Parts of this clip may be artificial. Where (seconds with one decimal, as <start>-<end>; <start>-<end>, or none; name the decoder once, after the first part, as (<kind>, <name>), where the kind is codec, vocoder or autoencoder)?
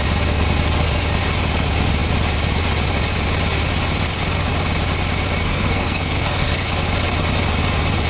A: 5.4-6.7 (codec, SNAC)